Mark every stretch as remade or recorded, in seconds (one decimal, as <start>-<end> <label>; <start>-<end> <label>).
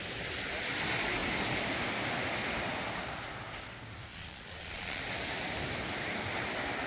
0.0-4.1 recorded; 4.1-5.0 remade; 5.0-6.9 recorded